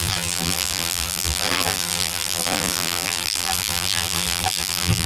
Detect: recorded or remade remade